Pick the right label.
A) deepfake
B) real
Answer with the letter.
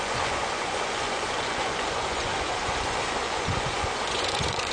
A